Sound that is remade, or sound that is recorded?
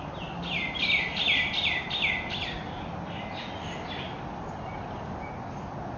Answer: recorded